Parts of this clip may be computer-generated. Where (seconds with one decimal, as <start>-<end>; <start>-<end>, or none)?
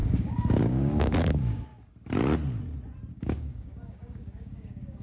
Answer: 0.0-1.7; 3.1-5.0